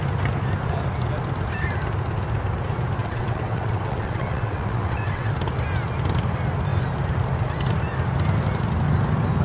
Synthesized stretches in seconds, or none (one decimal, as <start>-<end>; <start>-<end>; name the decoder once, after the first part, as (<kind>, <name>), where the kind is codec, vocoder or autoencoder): 3.0-5.3 (vocoder, WaveNeXt)